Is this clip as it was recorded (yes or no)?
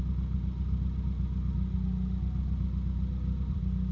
yes